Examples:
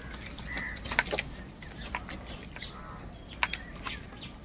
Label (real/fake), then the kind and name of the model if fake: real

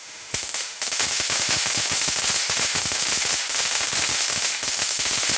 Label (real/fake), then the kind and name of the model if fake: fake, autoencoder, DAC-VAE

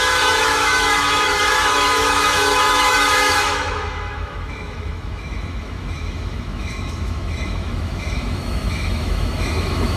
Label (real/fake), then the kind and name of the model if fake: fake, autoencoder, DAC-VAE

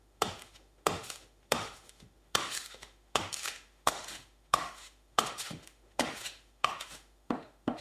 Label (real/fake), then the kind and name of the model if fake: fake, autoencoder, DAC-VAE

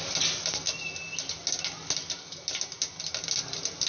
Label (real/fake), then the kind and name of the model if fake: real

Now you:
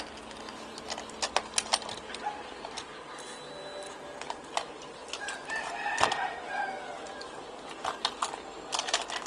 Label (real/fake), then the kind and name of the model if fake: real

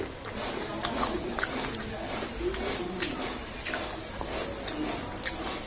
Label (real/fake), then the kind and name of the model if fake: real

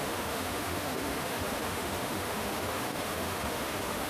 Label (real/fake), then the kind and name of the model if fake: fake, autoencoder, DAC-VAE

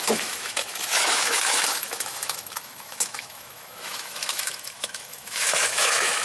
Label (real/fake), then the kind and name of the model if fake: fake, autoencoder, DAC-VAE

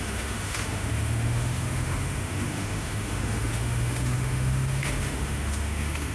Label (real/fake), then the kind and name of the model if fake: fake, autoencoder, DAC-VAE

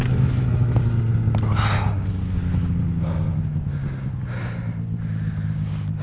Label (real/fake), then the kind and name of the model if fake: real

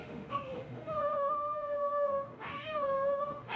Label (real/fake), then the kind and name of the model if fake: fake, autoencoder, DAC-VAE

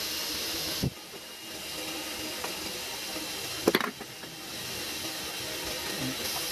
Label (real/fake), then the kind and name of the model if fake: real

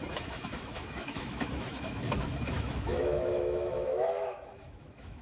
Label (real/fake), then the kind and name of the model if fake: fake, autoencoder, DAC-VAE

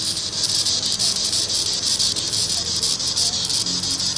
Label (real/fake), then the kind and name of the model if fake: real